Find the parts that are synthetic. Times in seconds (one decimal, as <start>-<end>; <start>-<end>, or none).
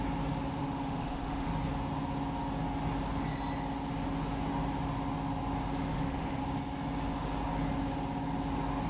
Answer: 0.6-1.5; 5.9-6.4